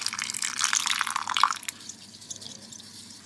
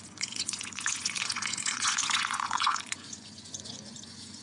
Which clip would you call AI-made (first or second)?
second